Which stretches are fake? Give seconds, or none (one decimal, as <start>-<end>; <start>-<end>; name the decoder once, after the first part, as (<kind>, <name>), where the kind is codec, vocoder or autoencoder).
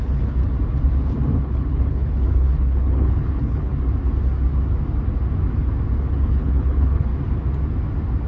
0.0-0.4 (codec, HILCodec); 1.4-3.7; 6.1-7.1